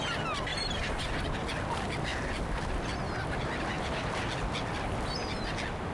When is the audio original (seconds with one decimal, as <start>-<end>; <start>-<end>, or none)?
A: 0.0-0.5; 1.2-5.9